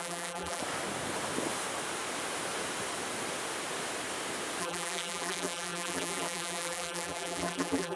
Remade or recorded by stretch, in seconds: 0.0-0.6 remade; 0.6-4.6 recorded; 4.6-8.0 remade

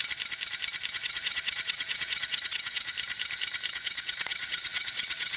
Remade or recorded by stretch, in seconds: 0.0-0.9 recorded; 0.9-2.9 remade; 2.9-3.7 recorded; 3.7-5.4 remade

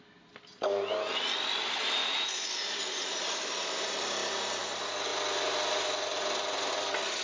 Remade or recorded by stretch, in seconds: 0.0-2.0 recorded; 2.0-4.6 remade; 4.6-7.2 recorded